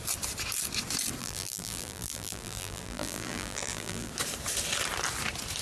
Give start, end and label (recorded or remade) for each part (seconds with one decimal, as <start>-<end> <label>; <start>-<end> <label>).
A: 0.0-1.2 recorded; 1.2-4.1 remade; 4.1-5.6 recorded